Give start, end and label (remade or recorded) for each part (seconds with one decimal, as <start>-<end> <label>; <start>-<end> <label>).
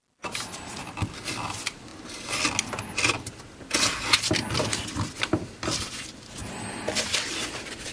0.0-1.9 remade; 1.9-4.6 recorded; 4.6-6.4 remade; 6.4-7.5 recorded; 7.5-7.9 remade